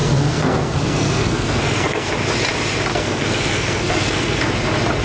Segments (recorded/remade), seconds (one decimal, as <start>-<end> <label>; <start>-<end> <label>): 0.0-2.1 remade; 2.1-2.9 recorded; 2.9-4.4 remade; 4.4-5.0 recorded